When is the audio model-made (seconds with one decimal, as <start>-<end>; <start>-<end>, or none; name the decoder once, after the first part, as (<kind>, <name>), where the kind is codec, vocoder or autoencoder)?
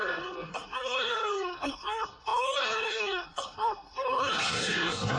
0.0-5.2 (codec, SNAC)